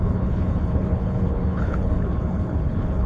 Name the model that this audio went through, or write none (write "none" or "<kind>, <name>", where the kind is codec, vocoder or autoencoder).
codec, HILCodec